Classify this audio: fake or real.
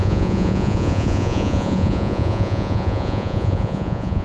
fake